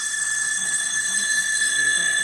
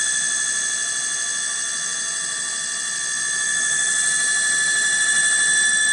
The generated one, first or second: first